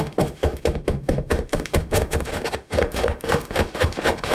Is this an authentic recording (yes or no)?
no